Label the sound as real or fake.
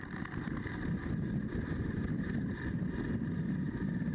real